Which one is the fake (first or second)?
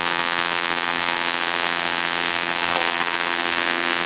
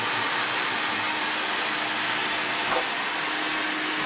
first